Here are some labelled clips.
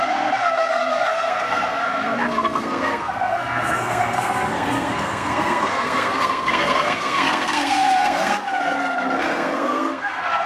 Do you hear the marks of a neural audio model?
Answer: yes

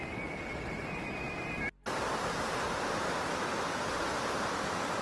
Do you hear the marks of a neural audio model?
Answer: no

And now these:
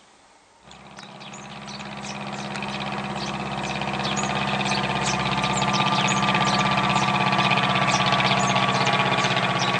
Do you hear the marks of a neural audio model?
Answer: no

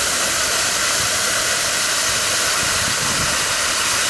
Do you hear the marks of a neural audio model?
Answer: no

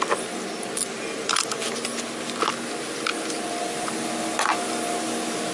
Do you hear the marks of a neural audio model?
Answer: no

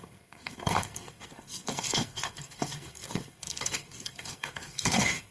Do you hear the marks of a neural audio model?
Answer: yes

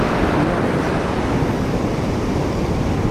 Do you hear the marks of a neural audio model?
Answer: no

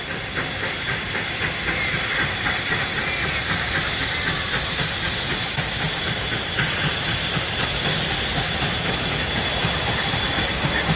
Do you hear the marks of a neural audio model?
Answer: no